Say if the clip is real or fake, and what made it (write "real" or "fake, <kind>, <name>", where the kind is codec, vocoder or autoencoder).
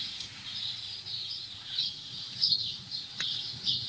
fake, vocoder, Vocos